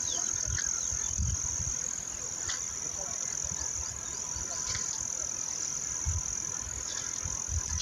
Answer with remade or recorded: recorded